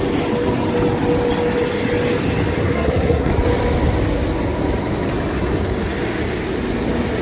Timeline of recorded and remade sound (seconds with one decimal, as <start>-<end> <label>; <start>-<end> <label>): 0.0-2.6 recorded; 2.6-3.3 remade; 3.3-7.2 recorded

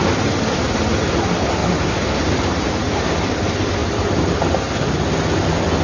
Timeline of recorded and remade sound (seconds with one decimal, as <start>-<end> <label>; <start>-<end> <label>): 0.0-1.6 recorded; 1.6-3.3 remade; 3.3-3.8 recorded; 3.8-4.4 remade; 4.4-5.8 recorded

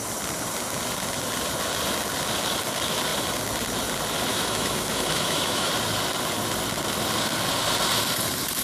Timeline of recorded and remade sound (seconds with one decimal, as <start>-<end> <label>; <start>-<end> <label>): 0.0-4.3 recorded; 4.3-5.7 remade; 5.7-8.6 recorded